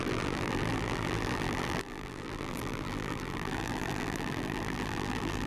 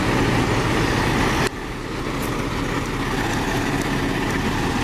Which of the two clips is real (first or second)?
second